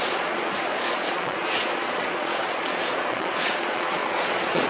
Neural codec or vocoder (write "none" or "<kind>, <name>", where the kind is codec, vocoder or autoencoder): vocoder, Vocos